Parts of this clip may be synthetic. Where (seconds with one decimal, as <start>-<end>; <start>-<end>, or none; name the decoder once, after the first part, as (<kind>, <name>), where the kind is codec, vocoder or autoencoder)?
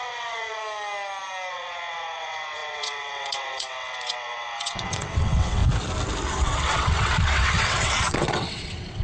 0.0-0.6 (vocoder, WaveNeXt); 1.5-5.6; 6.3-9.0